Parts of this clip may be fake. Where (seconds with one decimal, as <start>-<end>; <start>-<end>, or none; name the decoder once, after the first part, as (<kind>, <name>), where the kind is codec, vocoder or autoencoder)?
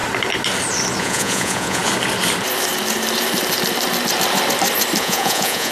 1.0-1.8 (vocoder, Vocos); 5.0-5.7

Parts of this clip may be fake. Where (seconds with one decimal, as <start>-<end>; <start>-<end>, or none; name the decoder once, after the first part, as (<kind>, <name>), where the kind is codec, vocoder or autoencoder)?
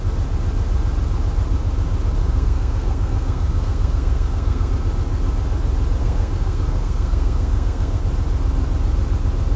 2.2-4.7 (codec, SNAC); 6.0-8.0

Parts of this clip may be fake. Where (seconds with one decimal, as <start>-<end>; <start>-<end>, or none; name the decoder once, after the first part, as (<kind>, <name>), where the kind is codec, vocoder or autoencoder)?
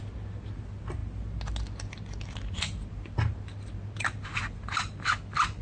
none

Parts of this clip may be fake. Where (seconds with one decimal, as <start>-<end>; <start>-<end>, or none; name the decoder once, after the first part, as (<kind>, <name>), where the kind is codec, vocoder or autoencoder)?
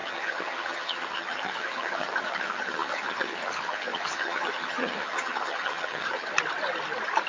0.0-6.3 (vocoder, HiFi-GAN)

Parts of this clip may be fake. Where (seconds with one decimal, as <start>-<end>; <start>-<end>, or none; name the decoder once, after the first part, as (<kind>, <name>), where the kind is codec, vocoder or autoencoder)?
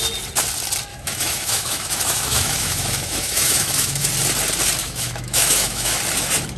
0.9-4.1 (autoencoder, DAC-VAE); 4.8-6.0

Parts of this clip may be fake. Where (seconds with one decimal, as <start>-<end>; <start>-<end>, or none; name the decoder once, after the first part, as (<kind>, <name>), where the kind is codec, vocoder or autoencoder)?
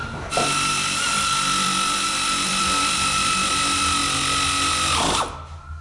0.0-3.5 (vocoder, BigVGAN v2)